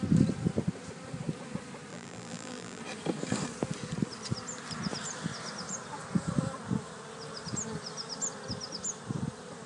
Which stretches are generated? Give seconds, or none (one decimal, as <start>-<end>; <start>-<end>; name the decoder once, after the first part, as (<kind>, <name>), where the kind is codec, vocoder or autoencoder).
1.9-2.8 (vocoder, BigVGAN v2)